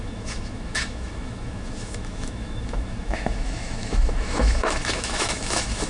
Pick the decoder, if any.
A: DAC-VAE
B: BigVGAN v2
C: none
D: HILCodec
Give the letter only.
A